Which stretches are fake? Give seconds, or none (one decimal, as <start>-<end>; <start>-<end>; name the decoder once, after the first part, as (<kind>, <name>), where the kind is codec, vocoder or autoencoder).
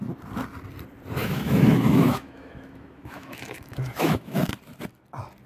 1.2-4.5 (autoencoder, DAC-VAE)